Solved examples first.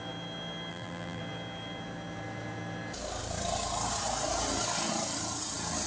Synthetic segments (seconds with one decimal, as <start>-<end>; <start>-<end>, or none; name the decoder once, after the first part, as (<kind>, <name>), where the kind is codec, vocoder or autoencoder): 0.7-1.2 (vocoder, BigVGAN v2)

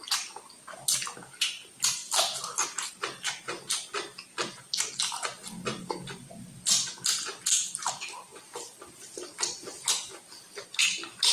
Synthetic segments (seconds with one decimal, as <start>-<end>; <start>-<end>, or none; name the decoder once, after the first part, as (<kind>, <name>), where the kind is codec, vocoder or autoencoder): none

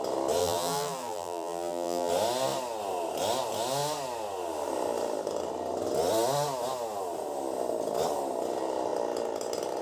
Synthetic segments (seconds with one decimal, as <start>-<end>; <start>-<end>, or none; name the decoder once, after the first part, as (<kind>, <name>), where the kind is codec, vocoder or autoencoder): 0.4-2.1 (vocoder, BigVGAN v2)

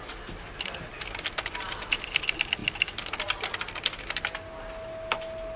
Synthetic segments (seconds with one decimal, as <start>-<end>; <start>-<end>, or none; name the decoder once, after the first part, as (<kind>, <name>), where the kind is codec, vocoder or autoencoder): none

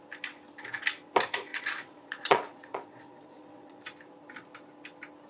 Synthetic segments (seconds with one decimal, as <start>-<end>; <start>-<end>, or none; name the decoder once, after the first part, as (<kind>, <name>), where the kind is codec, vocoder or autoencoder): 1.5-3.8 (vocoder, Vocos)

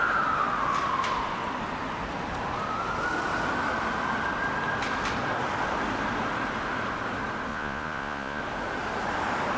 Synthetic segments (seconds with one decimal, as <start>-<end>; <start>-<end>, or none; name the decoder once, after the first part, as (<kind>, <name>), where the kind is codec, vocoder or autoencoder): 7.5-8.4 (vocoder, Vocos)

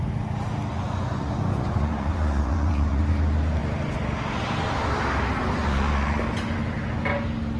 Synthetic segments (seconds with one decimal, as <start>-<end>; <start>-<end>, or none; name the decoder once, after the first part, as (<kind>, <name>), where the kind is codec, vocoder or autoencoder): 0.7-3.0 (vocoder, Vocos); 5.6-6.2